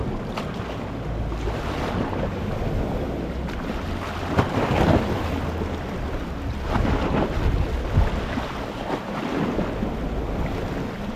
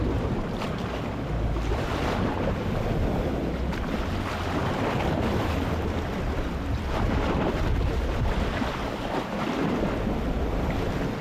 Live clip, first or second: first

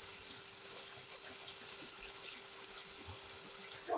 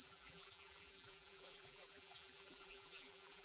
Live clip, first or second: first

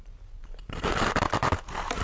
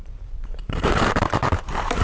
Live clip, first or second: first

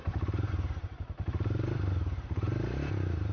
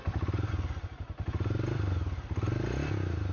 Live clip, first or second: second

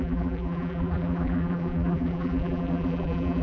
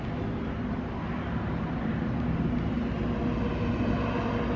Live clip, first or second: second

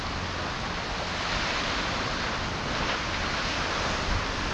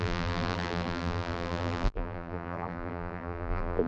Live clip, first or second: first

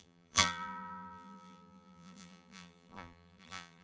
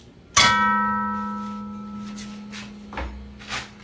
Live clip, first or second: second